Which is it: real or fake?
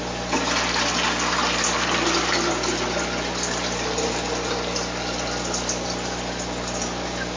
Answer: real